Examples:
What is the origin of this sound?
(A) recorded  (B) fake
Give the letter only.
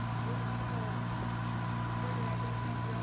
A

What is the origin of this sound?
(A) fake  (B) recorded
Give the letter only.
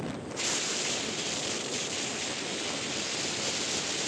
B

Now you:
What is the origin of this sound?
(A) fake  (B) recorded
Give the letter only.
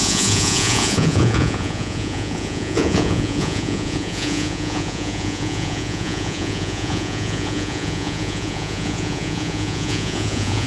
A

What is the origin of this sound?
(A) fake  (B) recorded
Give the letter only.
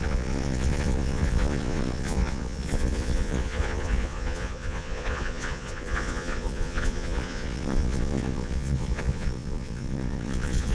A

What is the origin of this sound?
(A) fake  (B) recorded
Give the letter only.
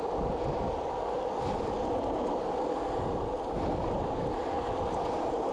B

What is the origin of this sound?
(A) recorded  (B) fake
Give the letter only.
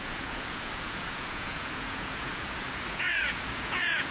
B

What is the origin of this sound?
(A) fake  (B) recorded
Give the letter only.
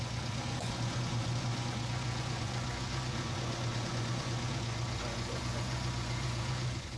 A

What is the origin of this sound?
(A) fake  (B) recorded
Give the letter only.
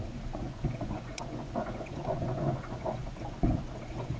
A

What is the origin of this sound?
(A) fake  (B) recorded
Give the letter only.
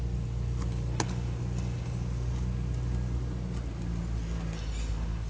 B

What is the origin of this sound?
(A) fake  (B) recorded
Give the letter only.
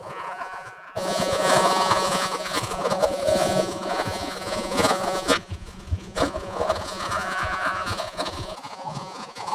A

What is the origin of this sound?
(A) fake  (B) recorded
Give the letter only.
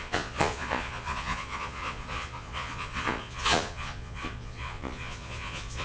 A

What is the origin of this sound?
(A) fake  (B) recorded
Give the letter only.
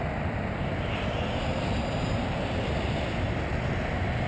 B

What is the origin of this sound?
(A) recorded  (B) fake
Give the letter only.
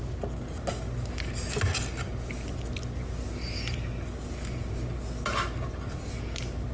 A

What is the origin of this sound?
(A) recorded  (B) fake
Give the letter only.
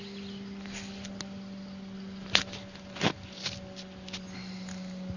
A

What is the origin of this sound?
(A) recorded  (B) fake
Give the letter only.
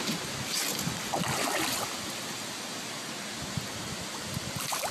A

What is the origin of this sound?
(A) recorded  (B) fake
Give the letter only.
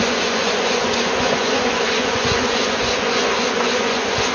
B